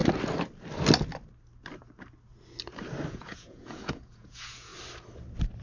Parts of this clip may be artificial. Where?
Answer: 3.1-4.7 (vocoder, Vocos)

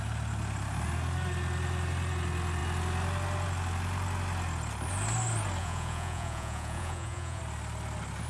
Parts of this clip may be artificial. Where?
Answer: 5.6-7.4 (vocoder, Vocos)